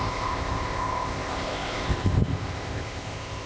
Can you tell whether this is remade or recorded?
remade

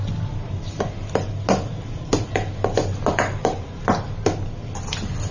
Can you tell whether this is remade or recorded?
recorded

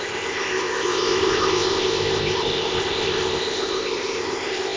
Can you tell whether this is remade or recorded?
remade